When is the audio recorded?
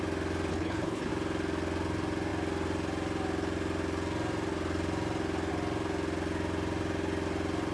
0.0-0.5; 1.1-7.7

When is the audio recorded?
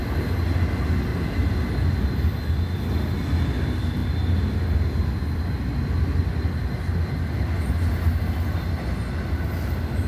0.0-1.1; 1.7-10.1